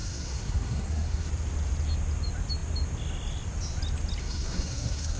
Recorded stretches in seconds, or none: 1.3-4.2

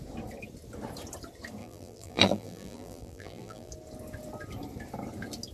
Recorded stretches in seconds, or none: 0.0-1.6; 3.7-5.5